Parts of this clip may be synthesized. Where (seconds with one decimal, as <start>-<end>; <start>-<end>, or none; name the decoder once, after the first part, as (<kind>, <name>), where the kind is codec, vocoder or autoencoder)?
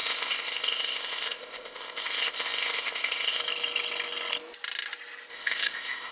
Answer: 0.0-3.4 (codec, ZipCodec); 5.3-6.1